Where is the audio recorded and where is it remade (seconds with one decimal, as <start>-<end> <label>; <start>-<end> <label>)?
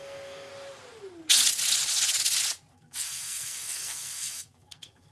0.0-0.5 remade; 0.5-2.7 recorded; 2.7-5.1 remade